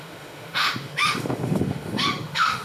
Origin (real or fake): fake